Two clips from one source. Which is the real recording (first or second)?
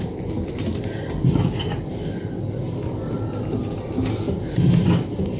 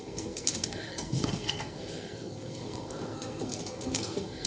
first